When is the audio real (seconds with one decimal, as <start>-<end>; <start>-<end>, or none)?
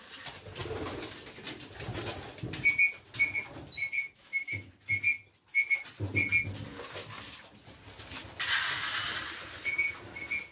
0.0-4.0; 4.7-10.5